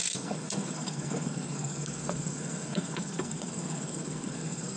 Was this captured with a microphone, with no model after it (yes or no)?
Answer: no